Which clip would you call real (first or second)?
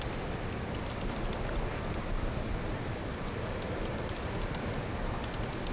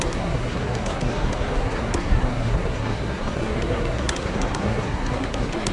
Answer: first